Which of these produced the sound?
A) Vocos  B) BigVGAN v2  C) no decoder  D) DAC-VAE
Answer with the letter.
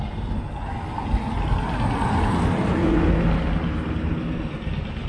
C